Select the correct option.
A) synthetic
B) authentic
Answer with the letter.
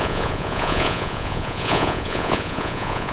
A